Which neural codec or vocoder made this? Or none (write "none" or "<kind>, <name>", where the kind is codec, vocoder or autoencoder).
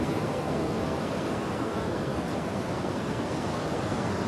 codec, SNAC